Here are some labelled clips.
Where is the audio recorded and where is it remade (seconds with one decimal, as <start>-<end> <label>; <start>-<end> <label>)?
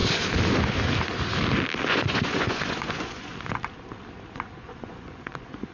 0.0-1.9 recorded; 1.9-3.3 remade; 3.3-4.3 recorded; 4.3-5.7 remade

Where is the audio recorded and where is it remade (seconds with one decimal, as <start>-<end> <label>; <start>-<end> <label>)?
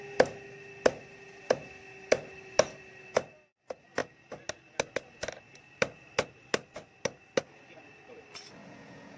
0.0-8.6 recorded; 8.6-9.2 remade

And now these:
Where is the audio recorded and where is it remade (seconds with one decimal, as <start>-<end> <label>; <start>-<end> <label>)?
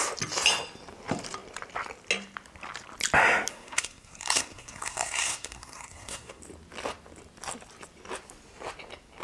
0.0-3.5 recorded; 3.5-6.4 remade; 6.4-9.2 recorded